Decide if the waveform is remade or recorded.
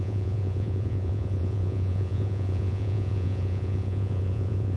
remade